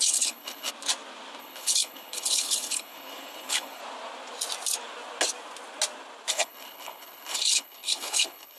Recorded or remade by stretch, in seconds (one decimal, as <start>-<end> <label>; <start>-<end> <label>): 0.0-0.7 remade; 0.7-1.4 recorded; 1.4-3.8 remade; 3.8-6.3 recorded; 6.3-8.6 remade